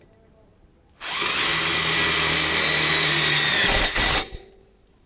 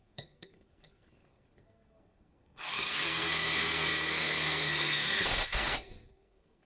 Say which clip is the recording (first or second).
first